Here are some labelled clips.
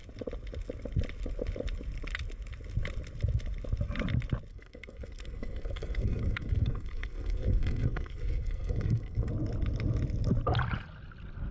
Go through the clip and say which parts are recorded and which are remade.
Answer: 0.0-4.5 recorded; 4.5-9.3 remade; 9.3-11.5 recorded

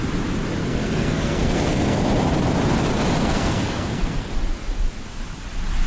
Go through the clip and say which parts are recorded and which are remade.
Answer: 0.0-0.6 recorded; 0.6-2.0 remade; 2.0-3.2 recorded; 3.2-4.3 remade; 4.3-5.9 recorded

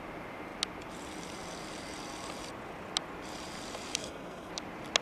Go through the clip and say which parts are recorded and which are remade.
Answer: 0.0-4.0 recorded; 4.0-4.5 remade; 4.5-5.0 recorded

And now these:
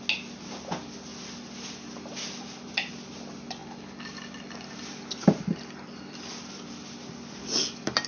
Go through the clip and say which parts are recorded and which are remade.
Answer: 0.0-8.1 recorded

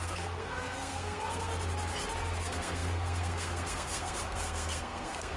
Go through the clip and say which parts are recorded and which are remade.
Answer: 0.0-1.5 remade; 1.5-2.4 recorded; 2.4-5.4 remade